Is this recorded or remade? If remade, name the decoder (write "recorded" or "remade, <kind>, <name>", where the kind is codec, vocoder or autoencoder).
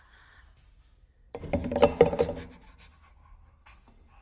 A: recorded